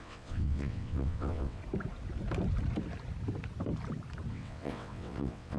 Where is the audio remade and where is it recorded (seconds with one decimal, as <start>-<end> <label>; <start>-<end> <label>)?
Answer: 0.0-1.6 remade; 1.6-4.3 recorded; 4.3-5.6 remade